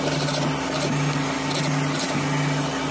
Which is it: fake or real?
real